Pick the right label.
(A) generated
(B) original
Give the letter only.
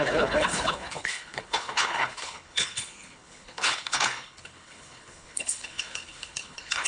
A